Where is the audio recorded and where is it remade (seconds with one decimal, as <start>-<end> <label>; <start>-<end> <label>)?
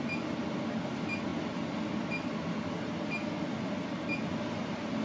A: 0.0-5.0 recorded